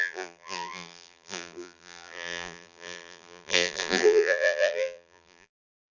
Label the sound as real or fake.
fake